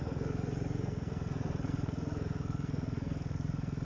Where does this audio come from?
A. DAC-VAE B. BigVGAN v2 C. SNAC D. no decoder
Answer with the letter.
C